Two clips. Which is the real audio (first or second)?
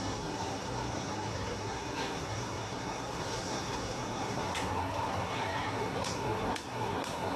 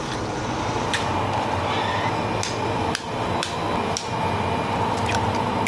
second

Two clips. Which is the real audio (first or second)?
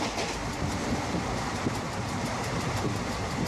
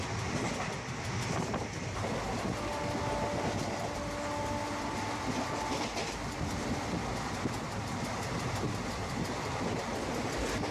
second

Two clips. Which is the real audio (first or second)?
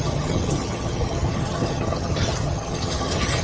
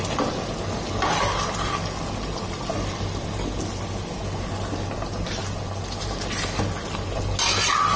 second